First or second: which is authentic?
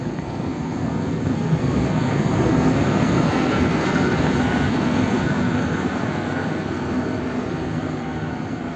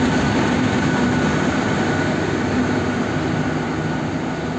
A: second